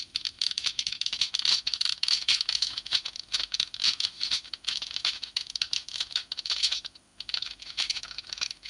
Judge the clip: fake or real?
fake